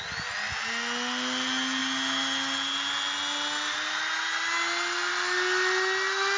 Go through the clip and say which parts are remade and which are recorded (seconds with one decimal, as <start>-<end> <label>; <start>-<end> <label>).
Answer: 0.0-6.4 recorded